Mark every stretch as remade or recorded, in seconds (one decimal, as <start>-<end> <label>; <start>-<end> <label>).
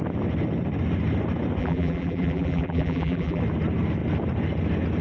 0.0-1.6 recorded; 1.6-3.4 remade; 3.4-5.0 recorded